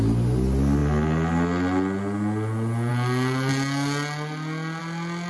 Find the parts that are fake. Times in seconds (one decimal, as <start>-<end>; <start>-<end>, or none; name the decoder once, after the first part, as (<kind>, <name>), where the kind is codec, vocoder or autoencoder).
none